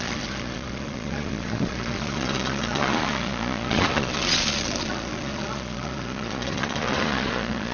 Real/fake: fake